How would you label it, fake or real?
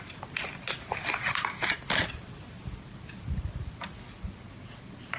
real